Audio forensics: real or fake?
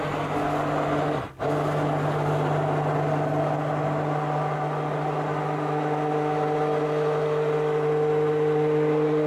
real